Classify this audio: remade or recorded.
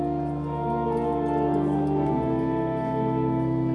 recorded